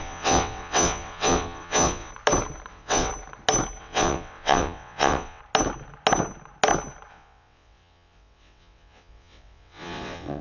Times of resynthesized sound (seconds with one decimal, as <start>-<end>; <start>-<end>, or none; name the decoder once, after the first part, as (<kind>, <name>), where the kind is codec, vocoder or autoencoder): 0.0-2.1 (vocoder, WaveNeXt); 2.7-3.1; 3.8-5.4; 7.1-10.4

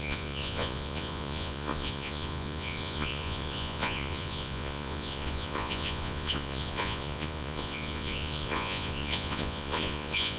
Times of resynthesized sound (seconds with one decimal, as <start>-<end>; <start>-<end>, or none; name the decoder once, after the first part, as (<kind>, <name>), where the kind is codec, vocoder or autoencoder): 0.0-10.4 (vocoder, Vocos)

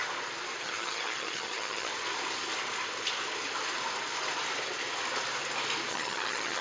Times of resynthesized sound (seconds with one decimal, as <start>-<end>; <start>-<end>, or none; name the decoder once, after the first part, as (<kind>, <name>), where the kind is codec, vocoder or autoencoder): 0.6-1.9 (vocoder, HiFi-GAN); 5.9-6.6

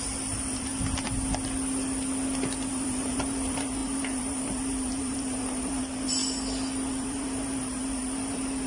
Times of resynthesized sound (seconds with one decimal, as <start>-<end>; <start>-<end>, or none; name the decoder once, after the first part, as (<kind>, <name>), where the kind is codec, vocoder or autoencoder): 0.0-0.7 (vocoder, BigVGAN v2); 2.7-6.2; 6.9-8.7

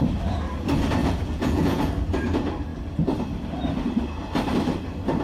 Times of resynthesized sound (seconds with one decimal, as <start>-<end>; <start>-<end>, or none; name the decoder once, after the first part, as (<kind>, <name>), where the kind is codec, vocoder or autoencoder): 1.0-1.9 (vocoder, Vocos)